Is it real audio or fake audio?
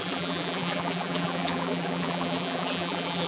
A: fake